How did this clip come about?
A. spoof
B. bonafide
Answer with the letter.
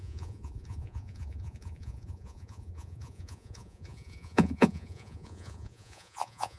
A